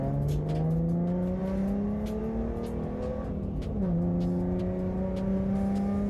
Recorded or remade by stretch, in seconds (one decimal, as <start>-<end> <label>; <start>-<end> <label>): 0.0-6.1 recorded